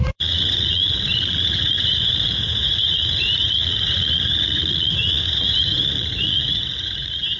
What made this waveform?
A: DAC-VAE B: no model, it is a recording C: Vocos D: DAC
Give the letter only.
C